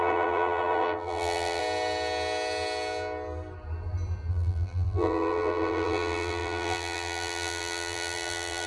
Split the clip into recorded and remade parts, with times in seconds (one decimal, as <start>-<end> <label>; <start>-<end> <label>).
0.0-1.6 remade; 1.6-4.3 recorded; 4.3-8.7 remade